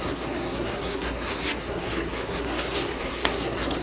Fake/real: fake